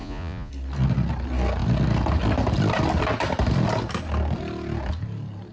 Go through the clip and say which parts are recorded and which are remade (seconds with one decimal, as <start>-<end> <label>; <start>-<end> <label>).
0.0-0.5 remade; 0.5-5.5 recorded

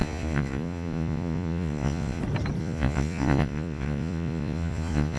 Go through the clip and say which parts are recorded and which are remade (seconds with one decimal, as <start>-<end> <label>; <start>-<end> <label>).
0.0-2.2 remade; 2.2-2.6 recorded; 2.6-5.2 remade